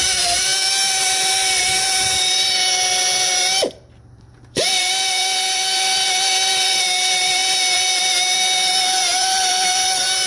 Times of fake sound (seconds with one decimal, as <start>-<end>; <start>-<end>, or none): 0.0-10.3